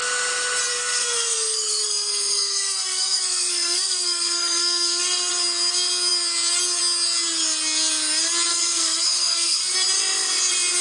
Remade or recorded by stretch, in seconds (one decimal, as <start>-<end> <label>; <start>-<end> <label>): 0.0-0.7 recorded; 0.7-5.3 remade; 5.3-8.5 recorded; 8.5-9.7 remade; 9.7-10.8 recorded